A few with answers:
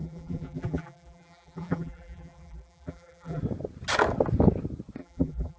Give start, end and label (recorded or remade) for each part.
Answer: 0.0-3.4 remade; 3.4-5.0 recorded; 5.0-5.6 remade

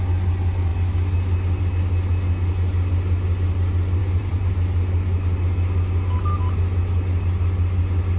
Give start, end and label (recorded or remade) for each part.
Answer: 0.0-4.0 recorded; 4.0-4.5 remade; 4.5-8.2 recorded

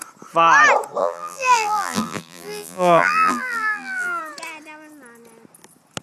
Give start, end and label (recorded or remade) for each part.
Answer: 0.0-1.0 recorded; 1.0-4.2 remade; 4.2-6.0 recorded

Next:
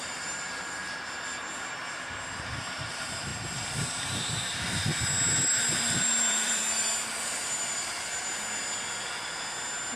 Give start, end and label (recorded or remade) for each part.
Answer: 0.0-0.8 remade; 0.8-1.9 recorded; 1.9-3.3 remade; 3.3-4.5 recorded; 4.5-4.9 remade; 4.9-5.7 recorded; 5.7-6.6 remade; 6.6-10.0 recorded

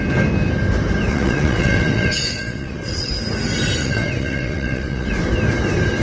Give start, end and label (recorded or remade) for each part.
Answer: 0.0-1.1 recorded; 1.1-3.1 remade; 3.1-3.8 recorded; 3.8-5.1 remade; 5.1-6.0 recorded

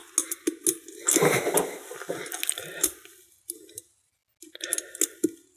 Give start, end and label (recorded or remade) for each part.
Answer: 0.0-5.6 recorded